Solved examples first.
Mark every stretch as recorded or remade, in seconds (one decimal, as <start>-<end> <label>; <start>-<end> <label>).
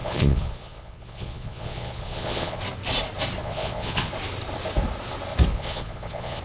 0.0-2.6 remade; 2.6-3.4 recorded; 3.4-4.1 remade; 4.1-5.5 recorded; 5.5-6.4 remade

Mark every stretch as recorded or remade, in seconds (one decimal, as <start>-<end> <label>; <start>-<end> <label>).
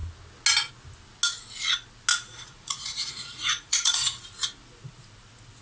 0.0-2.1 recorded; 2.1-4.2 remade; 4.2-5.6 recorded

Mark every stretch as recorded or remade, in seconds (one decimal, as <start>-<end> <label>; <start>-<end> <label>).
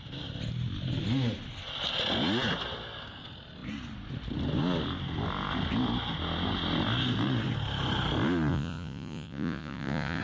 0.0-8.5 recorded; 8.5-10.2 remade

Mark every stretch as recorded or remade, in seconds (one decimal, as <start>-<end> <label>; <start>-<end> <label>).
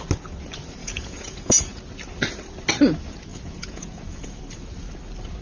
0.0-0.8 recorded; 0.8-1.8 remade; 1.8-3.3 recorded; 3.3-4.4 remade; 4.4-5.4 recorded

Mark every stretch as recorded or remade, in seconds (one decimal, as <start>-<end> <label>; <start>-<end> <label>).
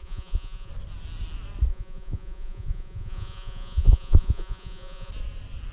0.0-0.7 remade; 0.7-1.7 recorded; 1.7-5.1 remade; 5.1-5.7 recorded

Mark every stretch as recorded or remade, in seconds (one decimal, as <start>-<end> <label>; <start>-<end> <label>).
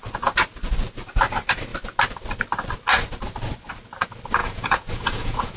0.0-4.4 recorded; 4.4-5.6 remade